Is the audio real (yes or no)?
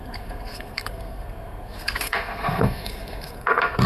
no